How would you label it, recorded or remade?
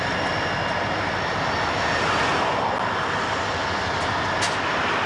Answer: recorded